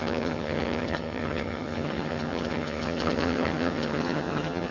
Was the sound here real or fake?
fake